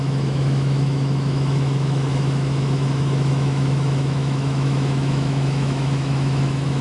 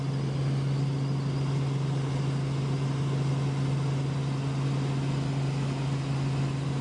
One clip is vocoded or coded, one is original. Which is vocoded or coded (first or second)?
first